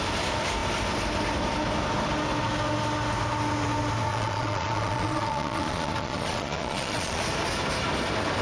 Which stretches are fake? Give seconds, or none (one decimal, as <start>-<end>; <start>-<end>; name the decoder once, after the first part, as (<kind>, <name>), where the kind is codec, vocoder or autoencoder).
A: 4.1-7.2 (vocoder, Vocos)